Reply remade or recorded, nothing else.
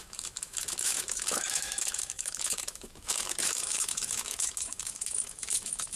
remade